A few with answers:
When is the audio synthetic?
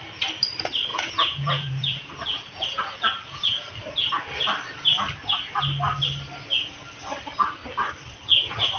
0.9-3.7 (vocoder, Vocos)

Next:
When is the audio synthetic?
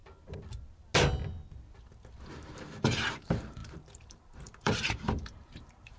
2.3-6.0 (vocoder, BigVGAN v2)